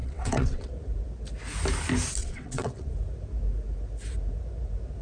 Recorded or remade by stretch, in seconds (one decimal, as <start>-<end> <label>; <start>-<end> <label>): 0.0-0.7 remade; 0.7-2.2 recorded; 2.2-2.9 remade; 2.9-5.0 recorded

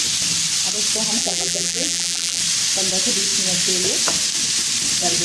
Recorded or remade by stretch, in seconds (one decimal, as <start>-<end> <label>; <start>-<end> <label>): 0.0-1.2 recorded; 1.2-2.4 remade; 2.4-5.2 recorded

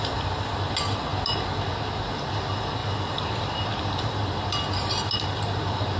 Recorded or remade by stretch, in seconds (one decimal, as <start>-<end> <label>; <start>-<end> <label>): 0.0-6.0 recorded

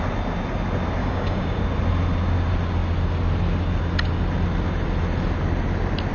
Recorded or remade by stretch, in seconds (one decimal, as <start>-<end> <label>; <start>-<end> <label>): 0.0-1.0 recorded; 1.0-1.6 remade; 1.6-6.1 recorded